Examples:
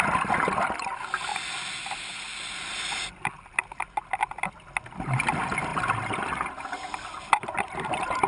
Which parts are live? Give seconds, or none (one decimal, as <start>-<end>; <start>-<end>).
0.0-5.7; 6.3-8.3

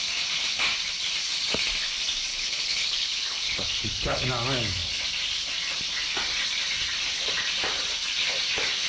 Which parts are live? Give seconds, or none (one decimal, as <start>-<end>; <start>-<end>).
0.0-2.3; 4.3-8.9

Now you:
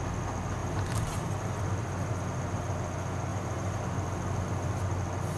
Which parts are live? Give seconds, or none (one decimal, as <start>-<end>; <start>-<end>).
0.0-0.6; 1.6-3.3; 3.8-5.4

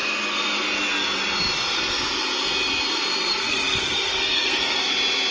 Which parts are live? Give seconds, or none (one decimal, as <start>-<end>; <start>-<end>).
0.0-3.3; 4.8-5.3